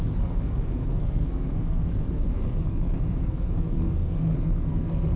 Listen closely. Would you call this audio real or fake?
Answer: fake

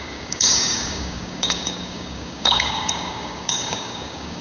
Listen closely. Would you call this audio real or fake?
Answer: fake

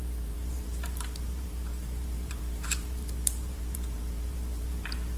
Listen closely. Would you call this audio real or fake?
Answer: fake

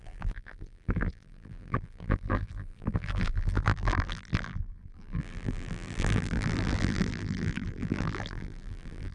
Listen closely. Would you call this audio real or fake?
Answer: fake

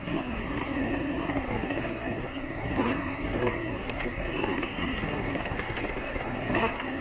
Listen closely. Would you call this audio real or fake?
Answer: fake